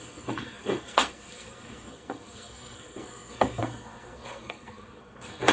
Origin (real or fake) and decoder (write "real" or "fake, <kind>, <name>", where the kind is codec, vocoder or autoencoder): fake, codec, SNAC